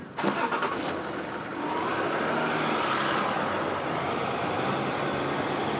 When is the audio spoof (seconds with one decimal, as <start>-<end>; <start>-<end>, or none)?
none